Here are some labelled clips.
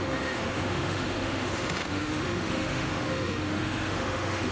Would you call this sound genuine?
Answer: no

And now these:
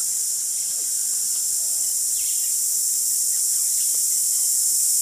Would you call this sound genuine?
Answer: yes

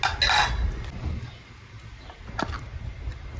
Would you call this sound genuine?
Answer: yes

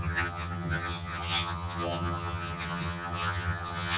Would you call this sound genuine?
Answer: no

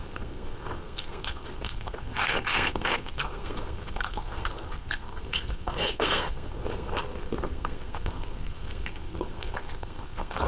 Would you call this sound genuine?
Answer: no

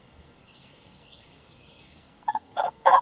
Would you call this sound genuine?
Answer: no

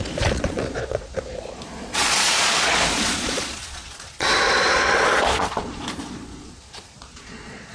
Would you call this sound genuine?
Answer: no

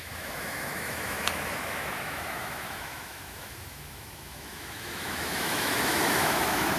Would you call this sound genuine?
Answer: no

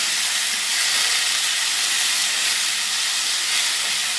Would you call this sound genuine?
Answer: yes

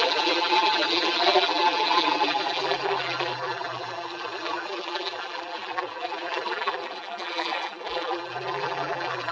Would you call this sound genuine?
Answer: no